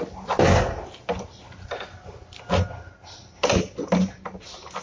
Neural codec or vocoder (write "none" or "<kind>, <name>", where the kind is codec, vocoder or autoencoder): none